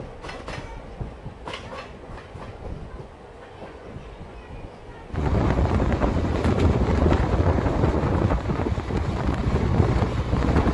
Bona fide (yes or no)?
no